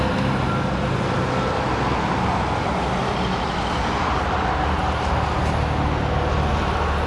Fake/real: real